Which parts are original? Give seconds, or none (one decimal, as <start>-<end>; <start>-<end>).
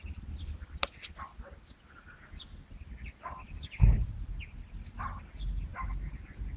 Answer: 0.0-6.6